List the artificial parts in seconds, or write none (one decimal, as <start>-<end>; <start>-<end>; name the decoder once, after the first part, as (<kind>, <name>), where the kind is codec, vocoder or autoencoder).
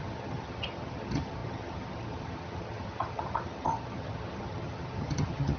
0.0-5.6 (vocoder, HiFi-GAN)